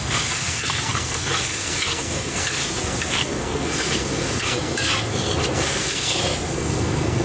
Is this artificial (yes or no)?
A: yes